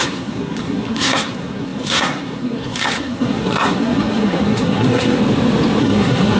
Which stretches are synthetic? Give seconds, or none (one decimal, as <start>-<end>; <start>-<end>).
0.0-5.2; 5.8-6.4